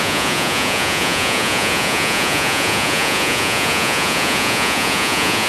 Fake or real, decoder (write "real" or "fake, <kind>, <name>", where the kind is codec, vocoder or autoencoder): fake, vocoder, Vocos